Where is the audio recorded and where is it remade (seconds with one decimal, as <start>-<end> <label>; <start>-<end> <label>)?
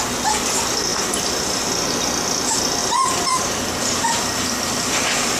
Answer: 0.0-0.9 recorded; 0.9-1.6 remade; 1.6-2.8 recorded; 2.8-4.2 remade; 4.2-5.4 recorded